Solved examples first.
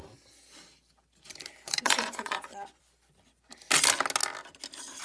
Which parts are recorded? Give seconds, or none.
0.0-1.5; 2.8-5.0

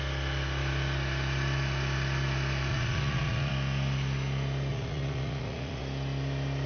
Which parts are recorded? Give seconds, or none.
0.0-2.7; 3.5-4.7; 5.8-6.7

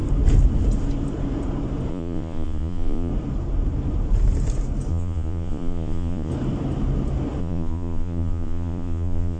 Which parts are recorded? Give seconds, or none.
0.0-1.9; 3.1-4.9; 6.3-7.4

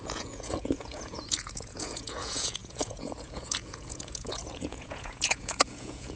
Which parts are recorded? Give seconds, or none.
none

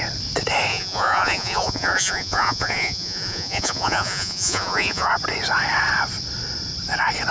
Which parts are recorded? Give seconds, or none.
0.0-0.7; 5.1-7.3

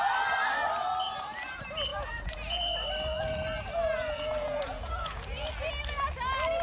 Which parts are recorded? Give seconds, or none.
0.0-1.9; 2.6-3.1; 5.5-6.6